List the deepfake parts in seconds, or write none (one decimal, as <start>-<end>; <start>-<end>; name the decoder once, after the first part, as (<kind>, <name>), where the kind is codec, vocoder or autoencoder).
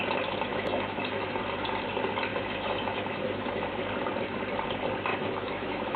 0.5-1.4 (autoencoder, DAC-VAE); 2.3-3.7; 5.1-6.0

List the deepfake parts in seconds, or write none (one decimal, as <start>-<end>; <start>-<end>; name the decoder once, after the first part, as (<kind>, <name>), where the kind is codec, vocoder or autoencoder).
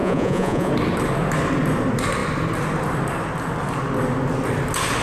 0.0-0.7 (vocoder, Vocos)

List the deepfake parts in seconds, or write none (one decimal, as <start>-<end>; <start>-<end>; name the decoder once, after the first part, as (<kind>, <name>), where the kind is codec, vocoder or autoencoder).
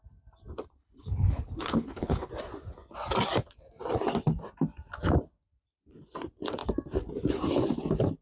0.8-2.3 (codec, HILCodec)